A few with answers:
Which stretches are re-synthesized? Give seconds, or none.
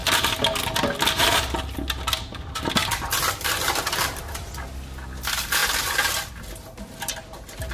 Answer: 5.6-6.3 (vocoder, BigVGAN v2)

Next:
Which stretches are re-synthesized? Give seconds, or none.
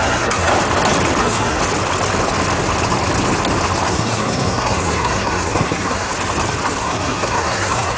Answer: 0.0-0.5 (codec, SNAC); 1.2-1.6; 3.9-6.1; 6.8-8.0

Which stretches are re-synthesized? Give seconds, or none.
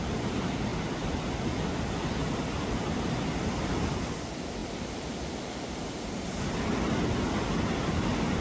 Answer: 0.7-1.3 (vocoder, BigVGAN v2); 2.2-2.8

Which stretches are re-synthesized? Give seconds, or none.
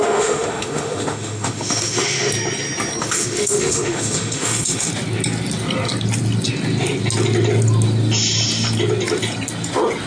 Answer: 0.0-2.3 (autoencoder, DAC-VAE); 3.0-4.9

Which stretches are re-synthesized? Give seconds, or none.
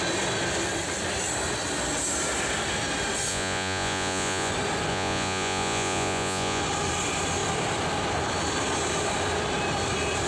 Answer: 3.3-4.5 (vocoder, Vocos); 4.9-6.6